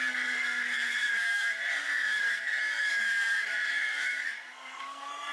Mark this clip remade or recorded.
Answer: remade